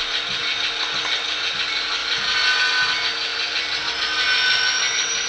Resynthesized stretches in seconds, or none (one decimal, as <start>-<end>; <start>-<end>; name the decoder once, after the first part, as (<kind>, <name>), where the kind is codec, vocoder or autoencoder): 2.0-2.6 (vocoder, BigVGAN v2); 3.3-3.9